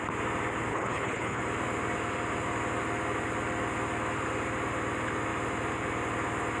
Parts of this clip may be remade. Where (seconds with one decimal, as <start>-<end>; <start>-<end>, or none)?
0.7-1.4

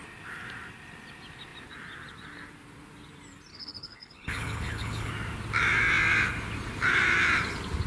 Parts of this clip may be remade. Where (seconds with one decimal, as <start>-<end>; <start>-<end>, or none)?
3.5-5.1

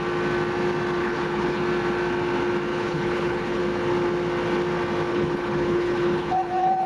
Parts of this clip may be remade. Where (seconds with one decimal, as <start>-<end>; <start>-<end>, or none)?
1.0-1.6; 2.7-3.6; 5.1-6.9

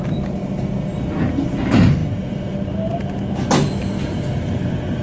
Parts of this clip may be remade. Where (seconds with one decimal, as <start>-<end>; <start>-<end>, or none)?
none

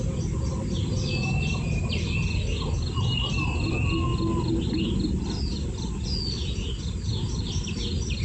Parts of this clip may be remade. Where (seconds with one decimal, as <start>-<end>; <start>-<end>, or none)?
none